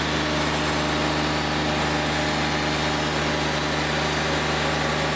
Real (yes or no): yes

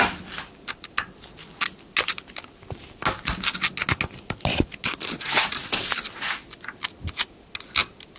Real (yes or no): yes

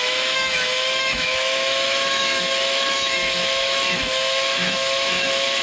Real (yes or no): no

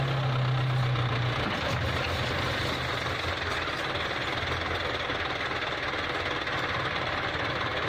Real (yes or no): yes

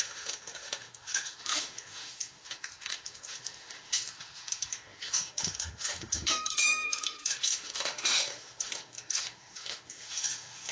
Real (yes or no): no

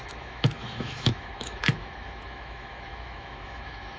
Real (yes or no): no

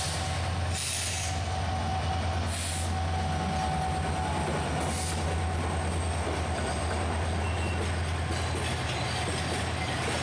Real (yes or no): yes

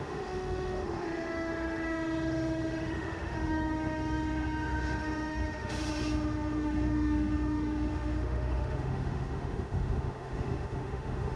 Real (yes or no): no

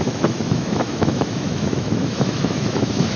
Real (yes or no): no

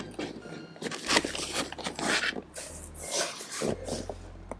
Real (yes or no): yes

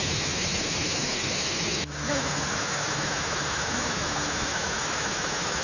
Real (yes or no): no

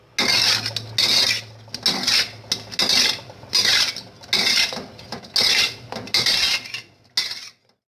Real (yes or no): yes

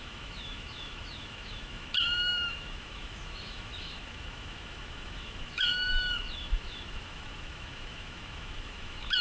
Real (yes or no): no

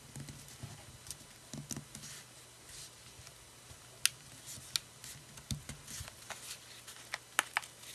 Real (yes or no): yes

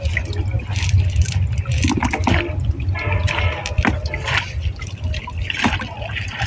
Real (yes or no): yes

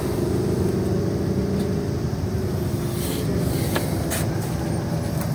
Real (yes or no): yes